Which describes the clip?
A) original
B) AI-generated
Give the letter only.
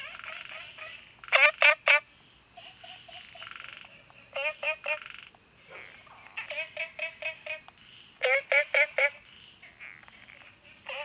A